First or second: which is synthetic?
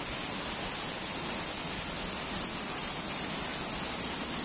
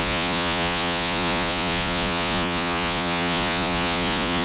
second